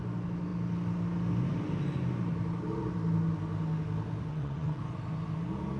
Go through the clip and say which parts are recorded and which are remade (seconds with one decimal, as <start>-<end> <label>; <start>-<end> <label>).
0.0-4.3 recorded; 4.3-4.8 remade; 4.8-5.8 recorded